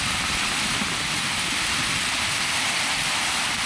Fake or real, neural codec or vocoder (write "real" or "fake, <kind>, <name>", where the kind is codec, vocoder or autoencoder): real